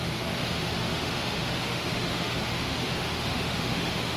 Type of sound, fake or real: fake